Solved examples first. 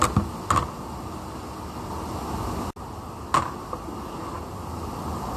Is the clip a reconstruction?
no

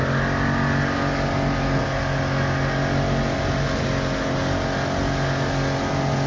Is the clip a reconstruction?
no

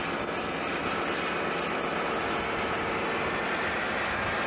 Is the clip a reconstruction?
no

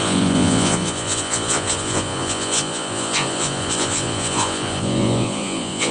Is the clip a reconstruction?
yes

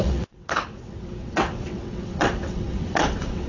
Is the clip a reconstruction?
yes